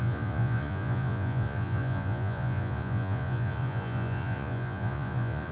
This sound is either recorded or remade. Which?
remade